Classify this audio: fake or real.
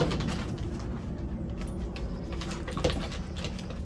real